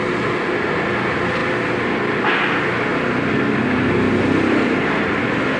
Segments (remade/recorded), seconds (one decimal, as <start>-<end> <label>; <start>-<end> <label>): 0.0-5.6 recorded